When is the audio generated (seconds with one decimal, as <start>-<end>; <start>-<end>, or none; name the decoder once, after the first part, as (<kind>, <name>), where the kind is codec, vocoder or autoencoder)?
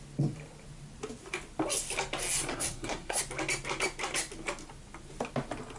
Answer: 2.5-3.2 (codec, SNAC)